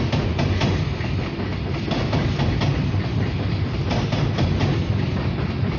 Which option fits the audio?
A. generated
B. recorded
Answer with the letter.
A